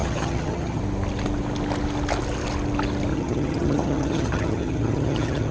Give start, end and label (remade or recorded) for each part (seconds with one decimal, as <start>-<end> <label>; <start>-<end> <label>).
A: 0.0-0.8 remade; 0.8-3.1 recorded; 3.1-5.5 remade

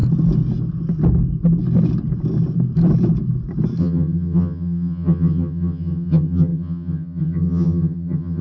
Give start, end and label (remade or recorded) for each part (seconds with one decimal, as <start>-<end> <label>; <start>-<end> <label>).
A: 0.0-3.8 recorded; 3.8-8.4 remade

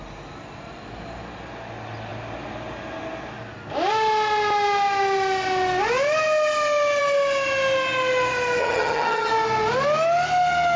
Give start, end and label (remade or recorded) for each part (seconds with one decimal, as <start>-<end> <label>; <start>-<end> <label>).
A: 0.0-8.6 recorded; 8.6-9.3 remade; 9.3-10.8 recorded

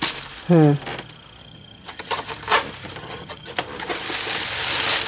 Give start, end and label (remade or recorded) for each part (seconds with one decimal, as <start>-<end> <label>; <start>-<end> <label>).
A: 0.0-1.4 recorded; 1.4-2.3 remade; 2.3-3.0 recorded; 3.0-3.5 remade; 3.5-5.1 recorded

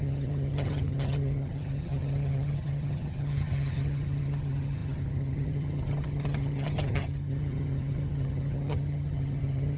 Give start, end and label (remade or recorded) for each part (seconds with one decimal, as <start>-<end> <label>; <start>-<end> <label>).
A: 0.0-9.8 remade

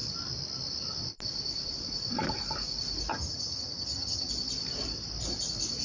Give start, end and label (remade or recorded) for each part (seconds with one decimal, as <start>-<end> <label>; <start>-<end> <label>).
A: 0.0-3.1 recorded; 3.1-4.3 remade; 4.3-5.8 recorded

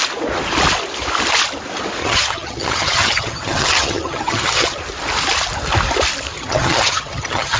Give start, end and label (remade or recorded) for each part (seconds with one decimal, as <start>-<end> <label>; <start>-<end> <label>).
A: 0.0-2.0 recorded; 2.0-4.8 remade; 4.8-6.3 recorded; 6.3-7.6 remade

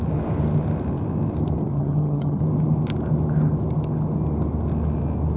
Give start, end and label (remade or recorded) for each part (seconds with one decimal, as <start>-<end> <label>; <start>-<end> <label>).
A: 0.0-1.6 recorded; 1.6-2.4 remade; 2.4-5.4 recorded